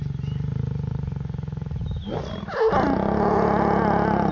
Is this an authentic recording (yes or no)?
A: yes